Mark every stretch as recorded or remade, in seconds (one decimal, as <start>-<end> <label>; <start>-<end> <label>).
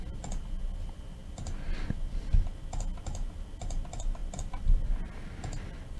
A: 0.0-6.0 recorded